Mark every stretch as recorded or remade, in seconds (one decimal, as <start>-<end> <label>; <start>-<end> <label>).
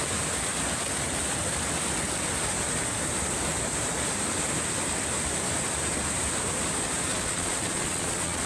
0.0-7.1 recorded; 7.1-8.5 remade